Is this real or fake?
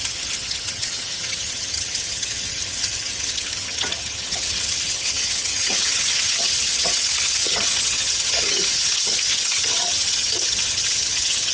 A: fake